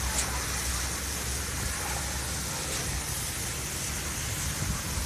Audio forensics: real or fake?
real